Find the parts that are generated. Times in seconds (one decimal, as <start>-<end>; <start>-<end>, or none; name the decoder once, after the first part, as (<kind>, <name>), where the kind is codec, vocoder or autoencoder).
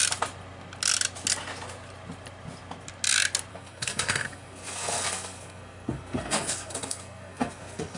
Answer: 3.5-8.0 (codec, SNAC)